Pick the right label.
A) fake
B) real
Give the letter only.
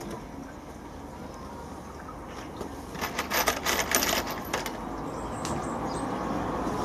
B